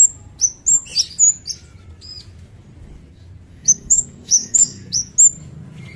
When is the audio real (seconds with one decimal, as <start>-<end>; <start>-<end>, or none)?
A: 0.0-3.5; 5.1-6.0